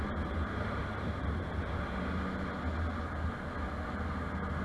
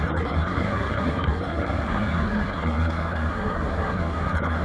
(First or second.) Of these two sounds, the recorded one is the first